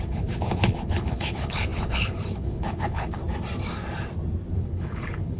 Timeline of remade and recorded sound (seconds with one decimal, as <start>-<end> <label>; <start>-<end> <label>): 0.0-3.2 remade; 3.2-4.5 recorded; 4.5-5.4 remade